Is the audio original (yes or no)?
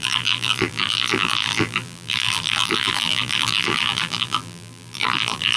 no